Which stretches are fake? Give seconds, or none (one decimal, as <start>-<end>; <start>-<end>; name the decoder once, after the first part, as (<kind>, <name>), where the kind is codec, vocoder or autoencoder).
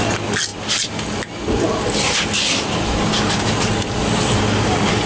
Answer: none